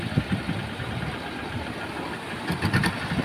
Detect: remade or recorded recorded